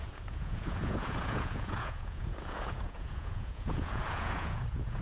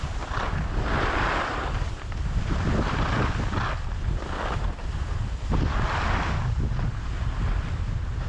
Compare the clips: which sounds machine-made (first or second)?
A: first